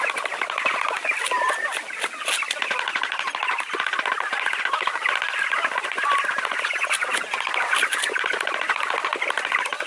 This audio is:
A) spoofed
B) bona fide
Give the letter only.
B